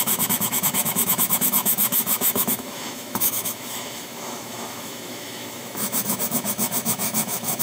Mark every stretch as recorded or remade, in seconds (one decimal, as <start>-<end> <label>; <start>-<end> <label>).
0.0-7.6 remade